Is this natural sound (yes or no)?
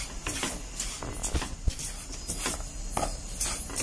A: yes